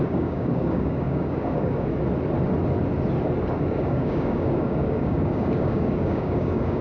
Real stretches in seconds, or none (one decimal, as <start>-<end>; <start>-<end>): 1.9-3.6